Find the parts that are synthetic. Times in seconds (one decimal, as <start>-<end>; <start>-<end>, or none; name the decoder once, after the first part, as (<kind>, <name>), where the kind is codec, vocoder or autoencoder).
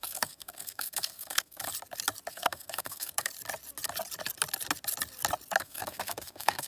0.0-1.7 (codec, SNAC); 2.3-3.3; 5.6-6.7